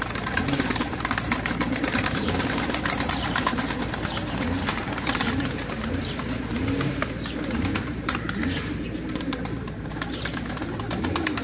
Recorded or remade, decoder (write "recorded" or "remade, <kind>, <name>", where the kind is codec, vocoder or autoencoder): remade, vocoder, BigVGAN v2